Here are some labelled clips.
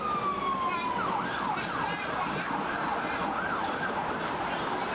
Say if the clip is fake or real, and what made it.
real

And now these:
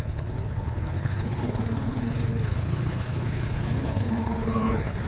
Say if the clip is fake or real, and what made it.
fake, codec, HILCodec